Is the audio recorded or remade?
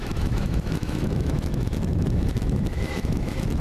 remade